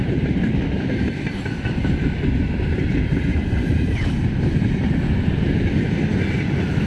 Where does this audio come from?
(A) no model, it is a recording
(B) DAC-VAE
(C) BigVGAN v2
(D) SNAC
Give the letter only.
C